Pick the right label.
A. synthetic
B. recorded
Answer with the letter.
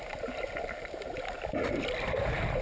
B